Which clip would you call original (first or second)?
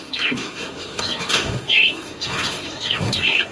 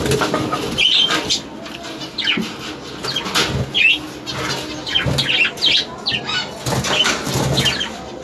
second